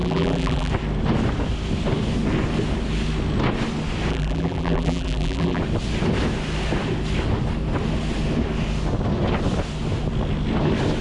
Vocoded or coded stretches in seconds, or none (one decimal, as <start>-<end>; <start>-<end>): 0.0-0.7; 4.1-5.6